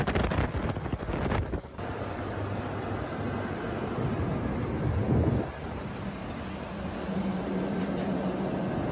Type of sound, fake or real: real